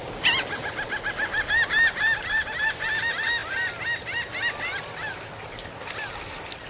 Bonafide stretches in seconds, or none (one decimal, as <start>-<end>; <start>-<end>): 0.0-6.7